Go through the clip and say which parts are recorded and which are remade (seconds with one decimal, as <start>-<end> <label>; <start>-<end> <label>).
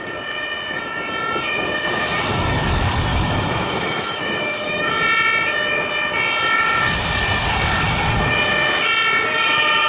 0.0-3.1 recorded; 3.1-4.9 remade; 4.9-9.9 recorded